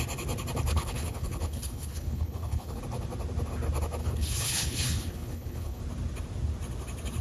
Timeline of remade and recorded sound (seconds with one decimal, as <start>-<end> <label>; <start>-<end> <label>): 0.0-0.7 recorded; 0.7-2.8 remade; 2.8-4.0 recorded; 4.0-5.8 remade; 5.8-7.2 recorded